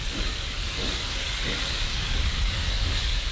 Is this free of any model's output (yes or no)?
no